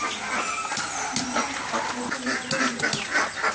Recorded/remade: recorded